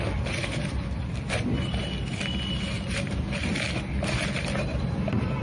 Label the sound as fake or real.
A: real